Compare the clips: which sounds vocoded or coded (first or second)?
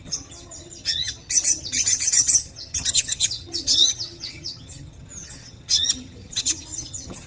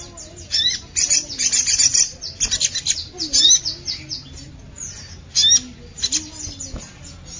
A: first